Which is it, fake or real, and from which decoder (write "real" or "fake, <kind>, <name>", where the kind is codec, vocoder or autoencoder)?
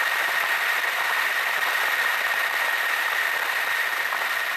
real